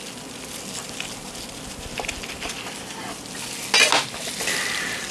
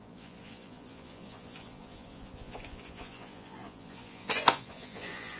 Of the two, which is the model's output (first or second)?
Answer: second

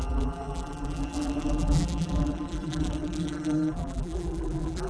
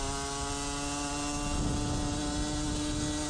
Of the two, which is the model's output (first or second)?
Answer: first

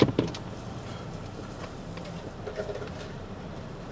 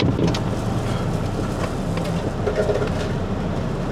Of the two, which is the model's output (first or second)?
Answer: first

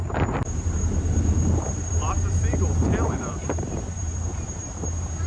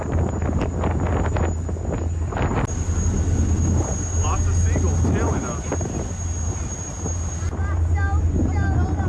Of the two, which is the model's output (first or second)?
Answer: first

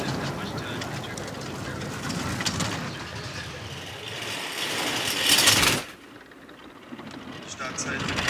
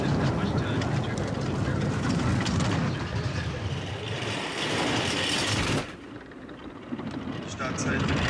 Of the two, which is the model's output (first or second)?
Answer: second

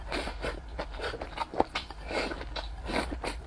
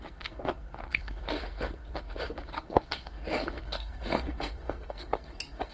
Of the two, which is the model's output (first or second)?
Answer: second